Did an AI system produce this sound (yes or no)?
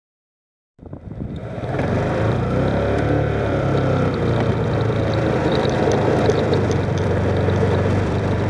yes